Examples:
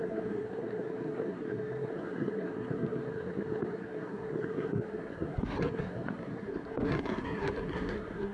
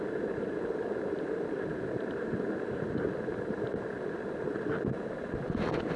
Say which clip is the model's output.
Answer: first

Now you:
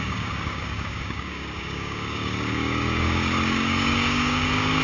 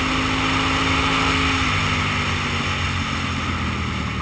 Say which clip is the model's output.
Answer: first